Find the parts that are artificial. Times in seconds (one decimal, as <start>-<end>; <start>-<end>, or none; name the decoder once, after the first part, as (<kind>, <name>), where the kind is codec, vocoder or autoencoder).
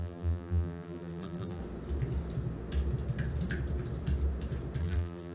0.0-1.6 (vocoder, BigVGAN v2); 4.8-5.3